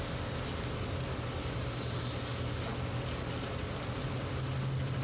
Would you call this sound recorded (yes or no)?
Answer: yes